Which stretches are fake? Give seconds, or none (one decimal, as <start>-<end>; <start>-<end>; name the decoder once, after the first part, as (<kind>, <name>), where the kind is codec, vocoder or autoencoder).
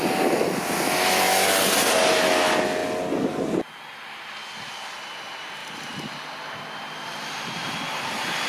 5.6-8.5 (vocoder, BigVGAN v2)